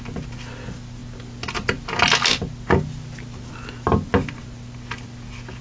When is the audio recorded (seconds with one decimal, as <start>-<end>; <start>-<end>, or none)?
0.0-5.6